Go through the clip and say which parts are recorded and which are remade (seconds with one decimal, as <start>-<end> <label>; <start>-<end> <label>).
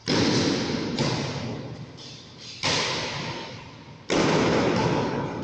0.0-5.4 recorded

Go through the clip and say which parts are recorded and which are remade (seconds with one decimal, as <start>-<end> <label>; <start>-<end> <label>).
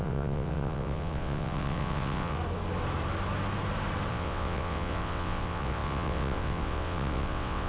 0.0-2.4 remade; 2.4-4.1 recorded; 4.1-7.7 remade